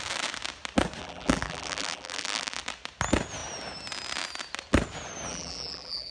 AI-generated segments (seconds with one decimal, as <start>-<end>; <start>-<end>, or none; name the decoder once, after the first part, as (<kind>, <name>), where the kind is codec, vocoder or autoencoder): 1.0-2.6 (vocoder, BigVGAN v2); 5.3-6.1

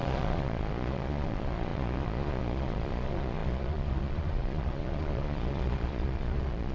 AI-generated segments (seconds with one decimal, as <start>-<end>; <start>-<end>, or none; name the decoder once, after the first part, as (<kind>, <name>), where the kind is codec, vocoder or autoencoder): 0.0-6.7 (vocoder, Vocos)

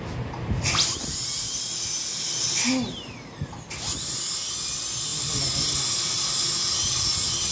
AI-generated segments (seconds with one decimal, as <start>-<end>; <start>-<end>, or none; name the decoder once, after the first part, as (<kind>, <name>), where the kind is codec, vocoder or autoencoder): none

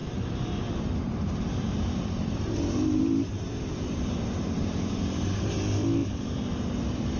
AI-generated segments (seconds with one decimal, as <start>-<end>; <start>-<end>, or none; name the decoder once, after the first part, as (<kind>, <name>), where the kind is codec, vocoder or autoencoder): 0.0-7.2 (vocoder, BigVGAN v2)

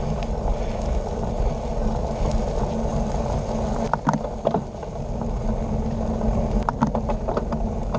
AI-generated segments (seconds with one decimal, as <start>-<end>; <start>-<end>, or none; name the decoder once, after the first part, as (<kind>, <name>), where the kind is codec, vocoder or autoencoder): none

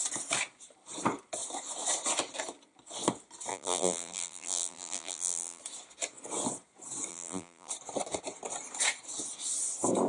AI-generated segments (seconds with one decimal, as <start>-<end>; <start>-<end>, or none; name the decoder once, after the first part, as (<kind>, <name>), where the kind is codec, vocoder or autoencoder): 3.5-5.6 (vocoder, BigVGAN v2); 7.1-7.7

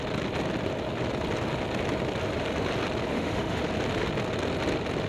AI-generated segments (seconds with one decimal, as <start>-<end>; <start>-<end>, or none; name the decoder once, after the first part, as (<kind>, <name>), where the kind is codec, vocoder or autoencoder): 3.1-3.6 (autoencoder, DAC-VAE)